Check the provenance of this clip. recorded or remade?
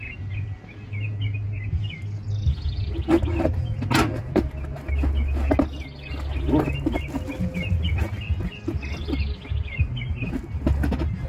recorded